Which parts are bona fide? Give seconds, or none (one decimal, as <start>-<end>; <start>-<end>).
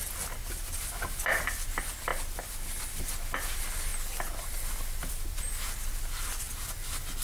0.0-7.2